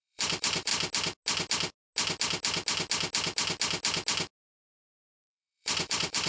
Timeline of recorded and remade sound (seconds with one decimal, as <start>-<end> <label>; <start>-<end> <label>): 0.0-0.7 remade; 0.7-4.5 recorded; 4.5-6.3 remade